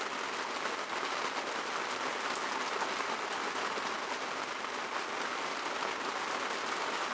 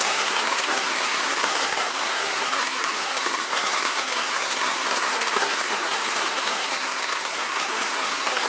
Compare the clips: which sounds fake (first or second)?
second